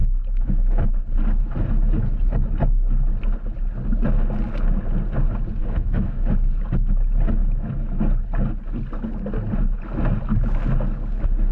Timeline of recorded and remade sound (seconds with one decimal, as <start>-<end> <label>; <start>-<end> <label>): 0.0-0.9 remade; 0.9-5.6 recorded; 5.6-6.3 remade; 6.3-7.4 recorded; 7.4-8.0 remade; 8.0-11.5 recorded